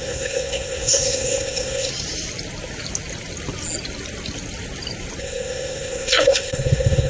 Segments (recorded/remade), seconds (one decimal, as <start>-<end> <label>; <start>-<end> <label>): 0.0-1.9 remade; 1.9-5.2 recorded; 5.2-7.1 remade